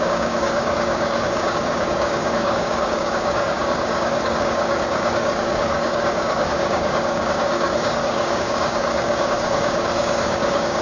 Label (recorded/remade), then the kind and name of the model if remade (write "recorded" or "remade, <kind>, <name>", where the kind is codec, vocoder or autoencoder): remade, codec, DAC